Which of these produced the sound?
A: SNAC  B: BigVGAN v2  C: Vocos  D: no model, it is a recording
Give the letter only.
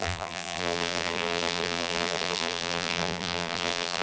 B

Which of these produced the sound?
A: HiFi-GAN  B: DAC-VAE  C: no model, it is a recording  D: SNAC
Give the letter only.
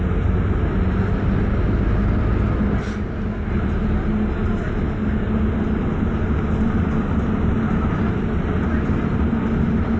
C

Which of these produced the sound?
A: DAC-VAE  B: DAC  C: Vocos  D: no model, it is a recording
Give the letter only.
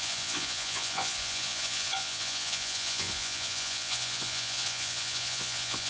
C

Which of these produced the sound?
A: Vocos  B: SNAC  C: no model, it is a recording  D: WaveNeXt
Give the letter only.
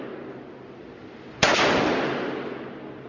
C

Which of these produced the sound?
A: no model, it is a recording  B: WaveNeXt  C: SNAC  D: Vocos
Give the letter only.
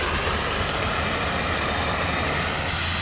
A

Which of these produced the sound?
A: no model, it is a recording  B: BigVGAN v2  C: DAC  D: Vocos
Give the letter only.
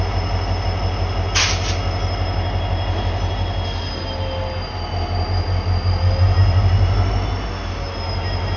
A